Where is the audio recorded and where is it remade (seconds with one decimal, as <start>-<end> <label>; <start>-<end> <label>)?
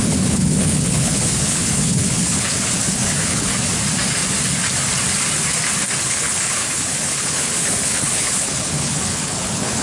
0.0-3.5 remade; 3.5-6.0 recorded; 6.0-9.8 remade